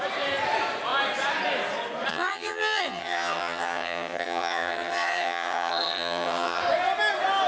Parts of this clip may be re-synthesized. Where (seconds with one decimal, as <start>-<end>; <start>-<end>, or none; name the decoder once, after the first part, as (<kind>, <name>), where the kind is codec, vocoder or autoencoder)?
2.1-6.6 (vocoder, HiFi-GAN)